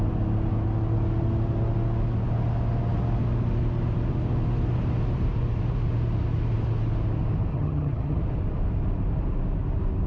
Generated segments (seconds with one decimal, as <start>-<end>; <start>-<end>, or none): 7.5-8.2